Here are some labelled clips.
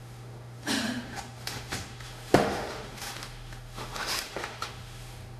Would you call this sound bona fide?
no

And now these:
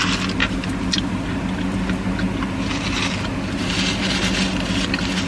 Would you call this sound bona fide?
yes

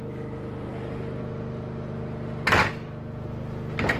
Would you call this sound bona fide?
yes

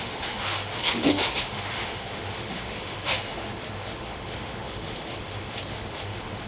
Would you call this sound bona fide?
no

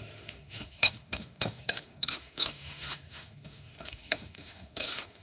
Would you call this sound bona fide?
no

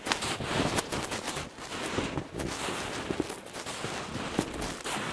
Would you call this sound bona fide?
yes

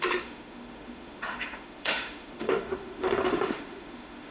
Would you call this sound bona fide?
no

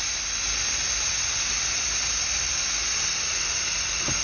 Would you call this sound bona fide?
yes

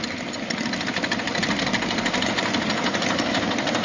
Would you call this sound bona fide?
yes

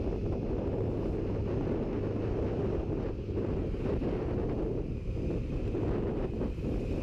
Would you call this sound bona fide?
yes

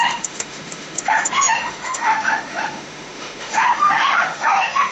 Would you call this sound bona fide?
no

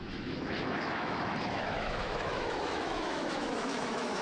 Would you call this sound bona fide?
no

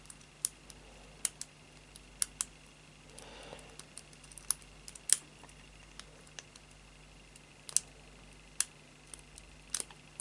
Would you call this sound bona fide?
yes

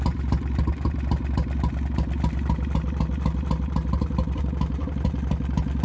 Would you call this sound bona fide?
yes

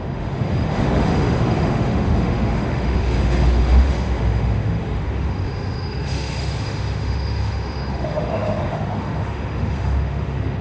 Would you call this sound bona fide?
no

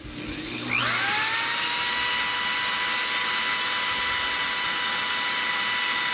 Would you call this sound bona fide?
yes